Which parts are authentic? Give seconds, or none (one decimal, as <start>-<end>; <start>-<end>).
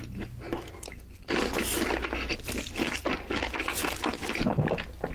0.0-5.1